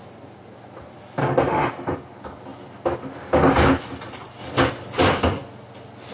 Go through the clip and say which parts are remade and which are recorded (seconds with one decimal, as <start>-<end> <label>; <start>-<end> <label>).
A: 0.0-1.2 recorded; 1.2-1.7 remade; 1.7-6.1 recorded